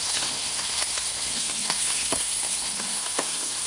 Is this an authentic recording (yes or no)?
no